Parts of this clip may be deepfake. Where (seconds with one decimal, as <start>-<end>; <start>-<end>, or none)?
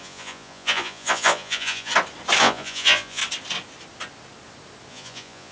0.0-1.9; 2.4-3.2; 4.9-5.5